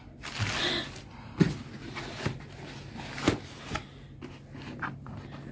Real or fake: real